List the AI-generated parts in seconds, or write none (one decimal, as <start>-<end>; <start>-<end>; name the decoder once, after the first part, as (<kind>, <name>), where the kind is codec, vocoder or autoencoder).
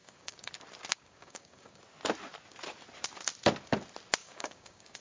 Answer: 0.0-0.5 (codec, DAC); 0.9-1.8; 4.2-5.0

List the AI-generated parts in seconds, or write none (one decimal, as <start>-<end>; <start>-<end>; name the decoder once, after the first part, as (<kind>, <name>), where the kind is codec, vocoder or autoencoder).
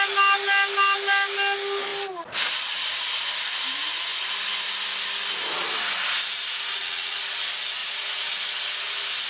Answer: 6.7-7.2 (vocoder, WaveNeXt)